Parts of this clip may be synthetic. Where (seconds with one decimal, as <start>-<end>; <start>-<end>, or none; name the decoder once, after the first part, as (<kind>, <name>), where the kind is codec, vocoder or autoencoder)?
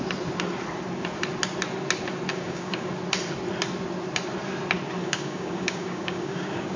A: 2.3-2.9 (codec, DAC); 5.0-6.8